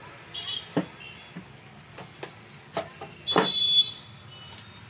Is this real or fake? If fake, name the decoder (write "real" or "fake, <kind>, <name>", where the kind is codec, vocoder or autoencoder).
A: real